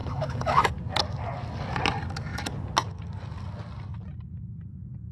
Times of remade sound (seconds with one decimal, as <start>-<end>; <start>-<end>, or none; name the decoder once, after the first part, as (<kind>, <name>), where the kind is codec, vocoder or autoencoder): 0.0-0.6 (autoencoder, DAC-VAE)